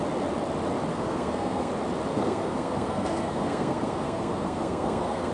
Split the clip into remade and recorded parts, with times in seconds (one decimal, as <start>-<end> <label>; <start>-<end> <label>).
0.0-0.9 recorded; 0.9-1.7 remade; 1.7-2.1 recorded; 2.1-5.3 remade